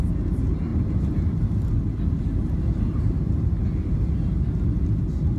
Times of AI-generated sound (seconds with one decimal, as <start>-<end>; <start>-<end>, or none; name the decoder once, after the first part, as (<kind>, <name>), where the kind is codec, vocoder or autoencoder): none